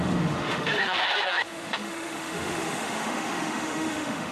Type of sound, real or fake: fake